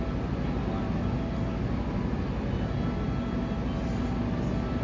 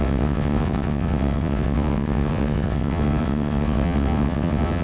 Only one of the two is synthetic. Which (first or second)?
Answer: second